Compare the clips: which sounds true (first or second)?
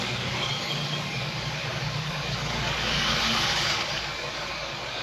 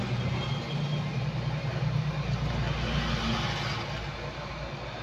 second